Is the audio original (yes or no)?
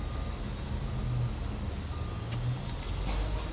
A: yes